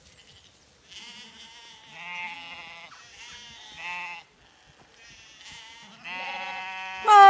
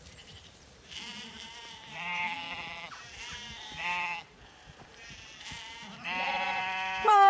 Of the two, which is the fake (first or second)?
second